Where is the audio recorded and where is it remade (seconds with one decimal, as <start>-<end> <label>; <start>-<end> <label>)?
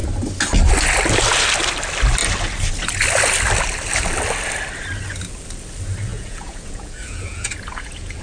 0.0-6.1 recorded; 6.1-8.2 remade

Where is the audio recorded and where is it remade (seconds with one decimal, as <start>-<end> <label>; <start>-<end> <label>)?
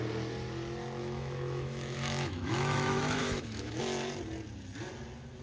0.0-1.0 recorded; 1.0-3.8 remade; 3.8-5.4 recorded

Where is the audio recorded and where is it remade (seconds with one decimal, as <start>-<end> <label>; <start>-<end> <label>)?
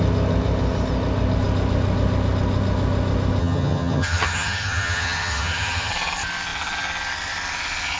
0.0-3.4 recorded; 3.4-5.9 remade; 5.9-8.0 recorded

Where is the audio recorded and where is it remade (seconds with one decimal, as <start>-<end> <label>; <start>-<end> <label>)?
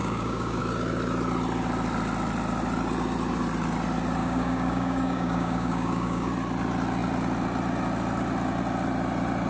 0.0-0.6 remade; 0.6-4.2 recorded; 4.2-6.3 remade; 6.3-9.5 recorded